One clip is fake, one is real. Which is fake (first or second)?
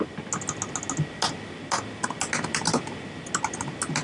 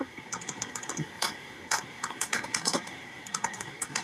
second